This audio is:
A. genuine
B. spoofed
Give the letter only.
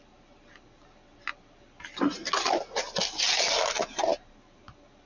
A